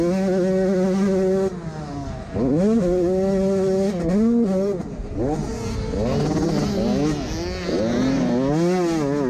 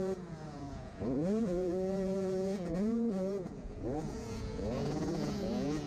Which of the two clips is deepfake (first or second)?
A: second